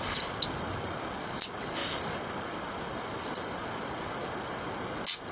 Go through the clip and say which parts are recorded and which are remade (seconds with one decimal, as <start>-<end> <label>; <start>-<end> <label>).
0.0-5.3 recorded